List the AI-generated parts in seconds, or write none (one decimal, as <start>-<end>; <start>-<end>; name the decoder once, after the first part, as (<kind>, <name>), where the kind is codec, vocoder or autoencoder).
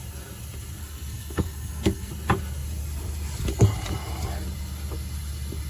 0.8-2.1 (codec, SNAC)